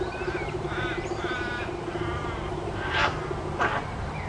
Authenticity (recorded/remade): remade